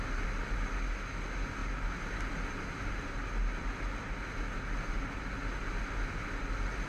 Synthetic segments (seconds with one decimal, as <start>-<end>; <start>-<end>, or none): none

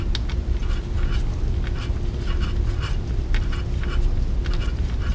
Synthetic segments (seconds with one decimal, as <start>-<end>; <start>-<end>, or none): none

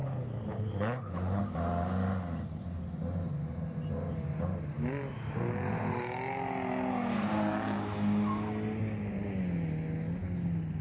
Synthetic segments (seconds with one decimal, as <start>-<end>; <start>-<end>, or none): 0.0-1.4

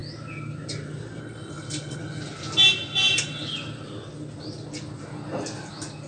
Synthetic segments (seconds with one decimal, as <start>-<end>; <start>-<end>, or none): 1.2-2.0

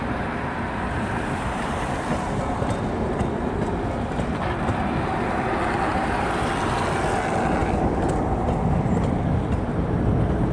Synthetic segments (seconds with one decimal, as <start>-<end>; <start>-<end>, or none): 5.9-6.5

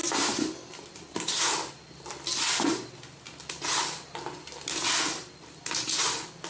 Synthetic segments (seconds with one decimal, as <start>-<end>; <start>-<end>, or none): none

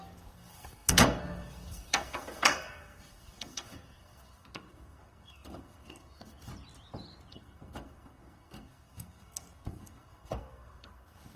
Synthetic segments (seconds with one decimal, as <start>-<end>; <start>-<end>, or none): 0.0-6.5; 7.3-11.4